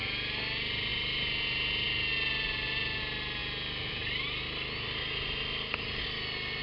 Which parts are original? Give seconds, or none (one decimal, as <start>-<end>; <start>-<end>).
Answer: 0.0-6.6